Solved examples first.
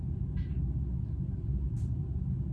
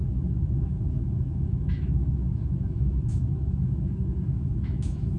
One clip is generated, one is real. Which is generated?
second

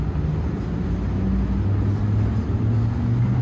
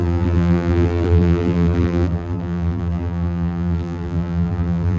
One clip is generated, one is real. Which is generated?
second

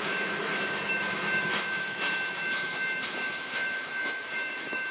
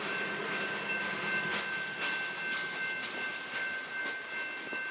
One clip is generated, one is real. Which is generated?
first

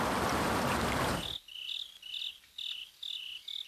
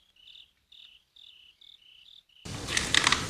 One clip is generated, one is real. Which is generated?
second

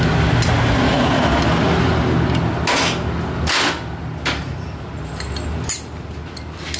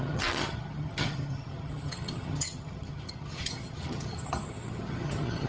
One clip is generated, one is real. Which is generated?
second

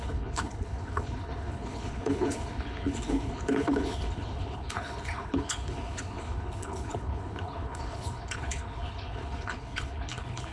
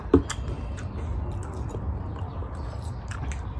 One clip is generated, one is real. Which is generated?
first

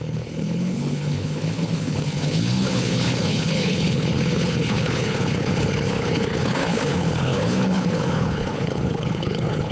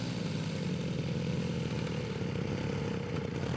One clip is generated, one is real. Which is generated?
first